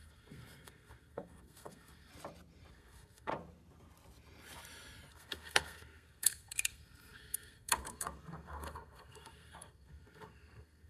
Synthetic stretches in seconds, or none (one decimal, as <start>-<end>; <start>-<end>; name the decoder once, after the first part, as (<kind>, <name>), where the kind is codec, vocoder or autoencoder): 0.0-2.1 (codec, SNAC); 2.7-3.3; 5.1-10.9